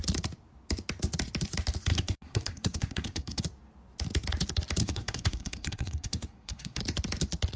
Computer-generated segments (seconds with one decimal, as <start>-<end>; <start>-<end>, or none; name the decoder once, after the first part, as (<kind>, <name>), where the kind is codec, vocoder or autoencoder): 1.9-3.4 (codec, SNAC); 4.8-6.8